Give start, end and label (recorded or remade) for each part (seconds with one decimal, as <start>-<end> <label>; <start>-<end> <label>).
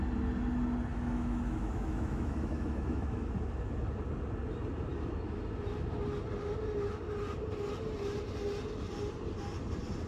0.0-0.9 recorded; 0.9-3.3 remade; 3.3-10.1 recorded